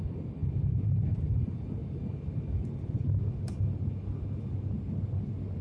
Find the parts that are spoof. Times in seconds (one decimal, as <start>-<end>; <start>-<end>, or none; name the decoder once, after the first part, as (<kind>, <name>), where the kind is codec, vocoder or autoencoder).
0.0-0.4 (vocoder, BigVGAN v2); 1.1-1.8